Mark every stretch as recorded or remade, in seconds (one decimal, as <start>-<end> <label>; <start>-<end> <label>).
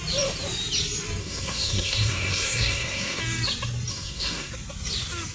0.0-1.2 recorded; 1.2-3.2 remade; 3.2-3.9 recorded; 3.9-4.5 remade; 4.5-5.3 recorded